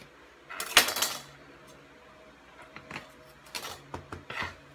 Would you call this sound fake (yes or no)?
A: no